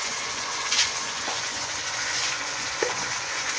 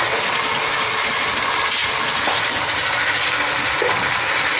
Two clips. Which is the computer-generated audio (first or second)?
first